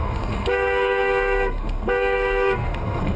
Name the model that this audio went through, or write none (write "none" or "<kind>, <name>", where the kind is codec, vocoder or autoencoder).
codec, SNAC